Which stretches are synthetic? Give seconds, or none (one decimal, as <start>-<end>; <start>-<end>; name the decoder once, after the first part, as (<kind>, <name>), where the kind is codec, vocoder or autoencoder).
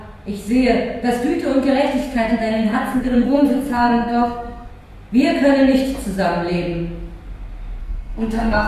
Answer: 2.0-4.7 (codec, SNAC); 7.8-8.7